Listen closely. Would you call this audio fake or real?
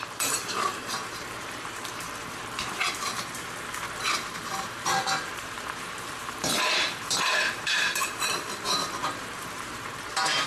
fake